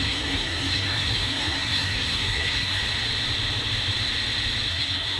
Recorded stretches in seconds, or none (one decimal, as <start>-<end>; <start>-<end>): 2.8-4.7